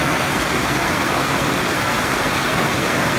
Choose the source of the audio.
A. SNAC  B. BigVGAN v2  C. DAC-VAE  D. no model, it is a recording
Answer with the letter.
A